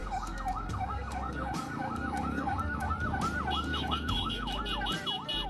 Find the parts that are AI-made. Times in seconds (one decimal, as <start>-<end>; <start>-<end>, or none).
0.0-2.9; 3.7-4.6